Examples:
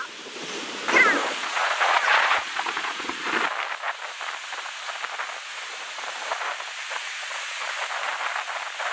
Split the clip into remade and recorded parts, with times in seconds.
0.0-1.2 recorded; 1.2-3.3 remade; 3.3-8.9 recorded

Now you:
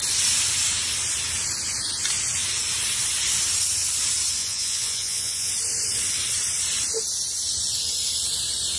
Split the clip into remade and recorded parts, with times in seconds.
0.0-4.4 recorded; 4.4-5.5 remade; 5.5-8.8 recorded